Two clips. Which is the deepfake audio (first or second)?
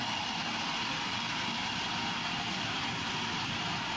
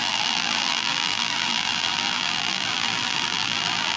second